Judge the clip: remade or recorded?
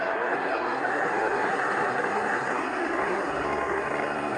remade